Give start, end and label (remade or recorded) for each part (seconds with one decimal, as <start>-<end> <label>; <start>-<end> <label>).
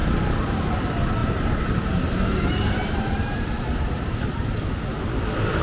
0.0-0.7 remade; 0.7-1.2 recorded; 1.2-4.6 remade; 4.6-5.6 recorded